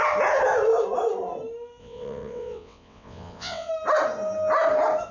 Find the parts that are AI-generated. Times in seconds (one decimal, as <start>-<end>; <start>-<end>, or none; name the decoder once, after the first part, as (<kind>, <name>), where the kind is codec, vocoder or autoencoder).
1.8-3.7 (vocoder, WaveNeXt)